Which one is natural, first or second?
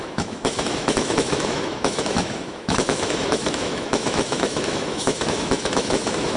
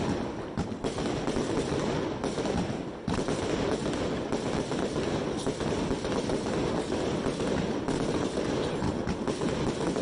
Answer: second